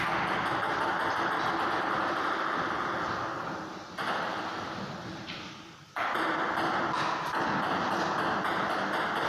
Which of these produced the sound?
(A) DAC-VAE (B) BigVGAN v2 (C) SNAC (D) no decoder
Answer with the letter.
D